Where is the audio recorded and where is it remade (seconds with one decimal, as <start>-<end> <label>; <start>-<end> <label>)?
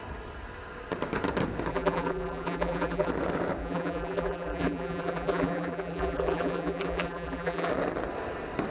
0.0-1.7 recorded; 1.7-3.1 remade; 3.1-3.6 recorded; 3.6-7.7 remade; 7.7-8.7 recorded